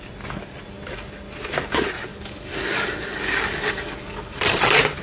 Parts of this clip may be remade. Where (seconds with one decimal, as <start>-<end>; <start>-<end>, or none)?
2.1-4.4